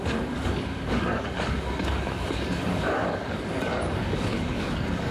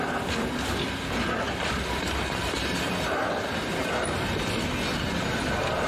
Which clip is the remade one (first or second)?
first